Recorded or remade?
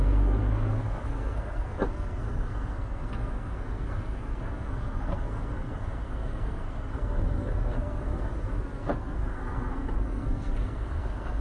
remade